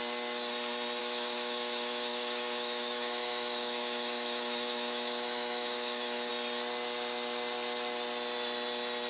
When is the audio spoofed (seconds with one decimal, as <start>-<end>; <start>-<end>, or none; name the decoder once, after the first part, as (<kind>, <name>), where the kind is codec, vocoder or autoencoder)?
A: 1.0-6.3 (autoencoder, DAC-VAE)